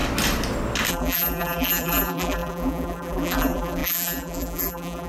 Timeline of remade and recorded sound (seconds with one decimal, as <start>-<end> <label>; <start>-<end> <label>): 0.0-0.9 recorded; 0.9-5.1 remade